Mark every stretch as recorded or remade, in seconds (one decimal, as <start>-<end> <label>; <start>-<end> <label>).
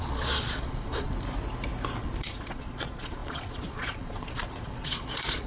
0.0-1.1 remade; 1.1-2.0 recorded; 2.0-5.5 remade